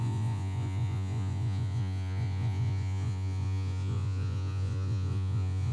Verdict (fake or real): fake